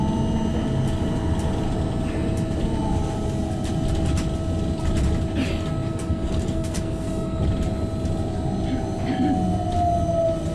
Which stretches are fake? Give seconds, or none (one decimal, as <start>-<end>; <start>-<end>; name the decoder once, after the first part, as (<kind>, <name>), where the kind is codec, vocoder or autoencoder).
5.9-7.4 (codec, SNAC)